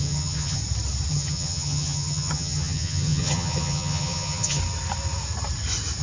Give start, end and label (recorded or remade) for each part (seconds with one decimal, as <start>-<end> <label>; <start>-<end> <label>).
0.0-0.6 remade; 0.6-1.1 recorded; 1.1-4.6 remade; 4.6-6.0 recorded